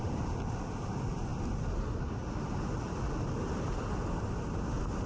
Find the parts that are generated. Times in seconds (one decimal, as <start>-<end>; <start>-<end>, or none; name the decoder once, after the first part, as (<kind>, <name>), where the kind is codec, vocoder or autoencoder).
none